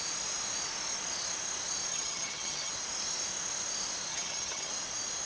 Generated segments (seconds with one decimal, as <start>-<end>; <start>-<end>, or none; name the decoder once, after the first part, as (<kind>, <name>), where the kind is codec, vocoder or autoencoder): 1.9-2.7 (vocoder, HiFi-GAN); 4.1-4.7